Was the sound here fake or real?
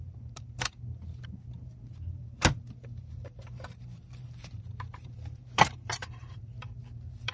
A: fake